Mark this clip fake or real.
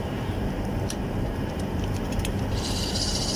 fake